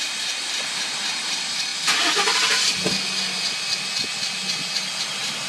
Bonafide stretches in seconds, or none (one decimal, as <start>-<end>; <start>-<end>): 1.7-5.0